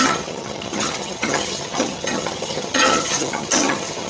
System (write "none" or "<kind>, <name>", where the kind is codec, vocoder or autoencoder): vocoder, HiFi-GAN